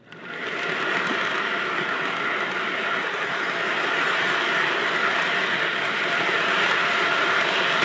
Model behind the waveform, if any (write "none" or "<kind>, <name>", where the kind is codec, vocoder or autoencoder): none